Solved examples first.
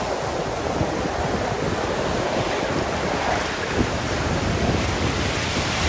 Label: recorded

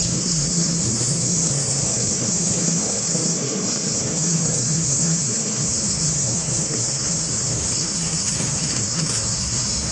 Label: remade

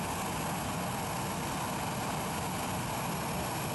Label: recorded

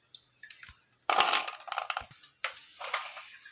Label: recorded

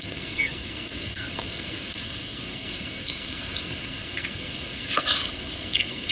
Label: remade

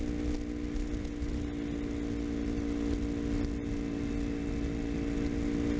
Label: recorded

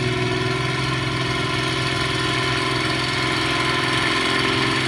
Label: recorded